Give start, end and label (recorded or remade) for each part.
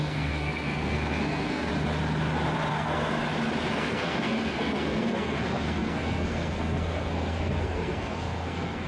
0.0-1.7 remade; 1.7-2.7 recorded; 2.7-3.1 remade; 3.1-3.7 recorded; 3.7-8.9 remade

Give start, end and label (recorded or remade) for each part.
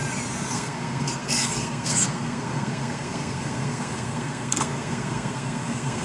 0.0-0.5 recorded; 0.5-6.0 remade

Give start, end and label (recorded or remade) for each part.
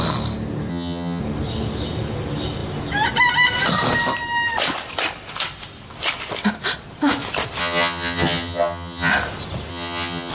0.0-0.7 recorded; 0.7-1.2 remade; 1.2-7.6 recorded; 7.6-9.1 remade; 9.1-9.7 recorded; 9.7-10.3 remade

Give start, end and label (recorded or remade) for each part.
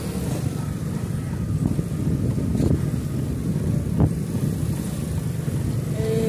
0.0-6.3 recorded